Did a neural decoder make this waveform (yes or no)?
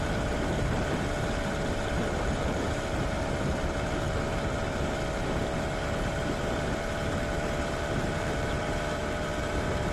yes